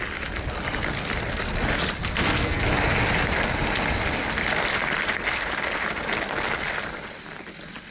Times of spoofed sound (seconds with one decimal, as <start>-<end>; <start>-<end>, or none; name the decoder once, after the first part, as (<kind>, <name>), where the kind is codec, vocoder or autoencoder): 2.0-2.6 (codec, SNAC)